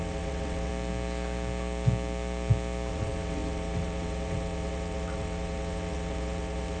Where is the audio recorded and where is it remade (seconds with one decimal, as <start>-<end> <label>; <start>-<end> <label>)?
0.0-0.7 remade; 0.7-2.9 recorded; 2.9-6.8 remade